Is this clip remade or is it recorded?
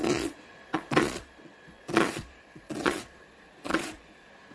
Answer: remade